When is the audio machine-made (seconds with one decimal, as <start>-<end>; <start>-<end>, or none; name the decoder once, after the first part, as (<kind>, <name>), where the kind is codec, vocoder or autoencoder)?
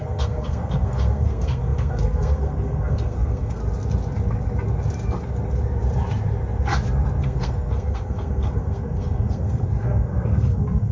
0.0-3.6 (codec, SNAC); 7.2-10.9